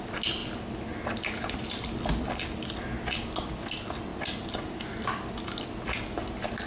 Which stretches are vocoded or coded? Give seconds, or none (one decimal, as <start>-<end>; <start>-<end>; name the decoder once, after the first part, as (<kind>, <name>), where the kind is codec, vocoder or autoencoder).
none